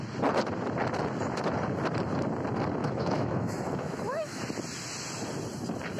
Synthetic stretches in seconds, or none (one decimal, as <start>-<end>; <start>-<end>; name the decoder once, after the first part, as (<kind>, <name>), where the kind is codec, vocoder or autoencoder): 2.8-4.4 (autoencoder, DAC-VAE)